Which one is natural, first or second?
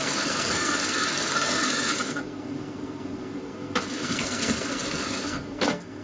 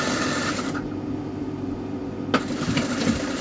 second